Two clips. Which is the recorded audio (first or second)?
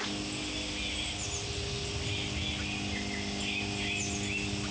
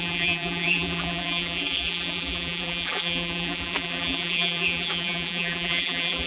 first